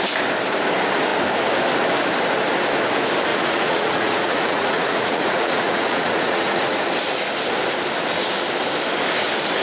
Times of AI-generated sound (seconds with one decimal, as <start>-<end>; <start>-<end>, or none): 3.3-6.9